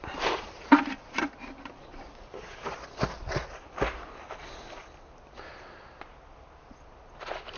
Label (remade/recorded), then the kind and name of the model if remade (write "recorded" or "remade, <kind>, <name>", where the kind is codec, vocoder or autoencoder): recorded